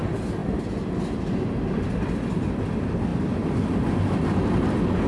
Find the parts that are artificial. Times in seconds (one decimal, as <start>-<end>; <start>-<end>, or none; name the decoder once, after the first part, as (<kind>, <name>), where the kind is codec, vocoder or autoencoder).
3.1-4.6 (vocoder, BigVGAN v2)